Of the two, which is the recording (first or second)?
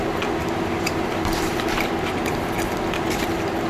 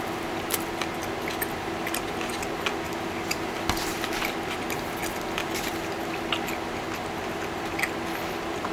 second